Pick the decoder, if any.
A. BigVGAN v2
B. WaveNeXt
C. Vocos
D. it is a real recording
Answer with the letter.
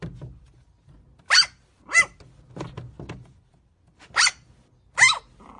D